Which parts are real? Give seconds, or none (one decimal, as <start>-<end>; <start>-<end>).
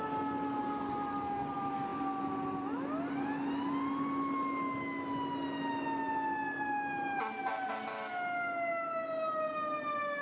0.0-10.2